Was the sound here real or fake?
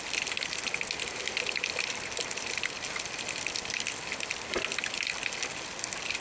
real